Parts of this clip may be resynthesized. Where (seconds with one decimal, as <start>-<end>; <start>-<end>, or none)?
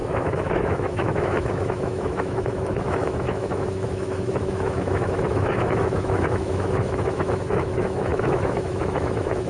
0.0-9.5